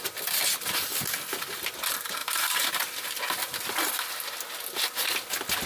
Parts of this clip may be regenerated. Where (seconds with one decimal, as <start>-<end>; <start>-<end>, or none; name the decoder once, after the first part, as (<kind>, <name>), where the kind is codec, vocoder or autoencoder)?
2.2-3.1 (vocoder, BigVGAN v2)